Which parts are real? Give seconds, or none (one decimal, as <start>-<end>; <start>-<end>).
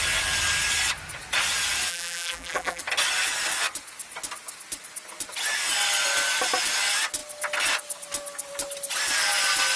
0.0-1.9; 2.8-9.8